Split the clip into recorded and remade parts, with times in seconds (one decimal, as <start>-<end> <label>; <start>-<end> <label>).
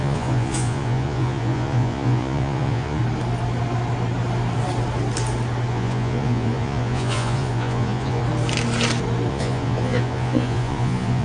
0.0-3.0 remade; 3.0-5.7 recorded; 5.7-8.2 remade; 8.2-9.3 recorded; 9.3-11.2 remade